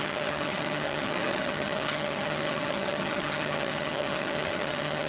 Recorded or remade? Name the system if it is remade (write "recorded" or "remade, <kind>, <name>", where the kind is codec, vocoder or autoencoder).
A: remade, vocoder, HiFi-GAN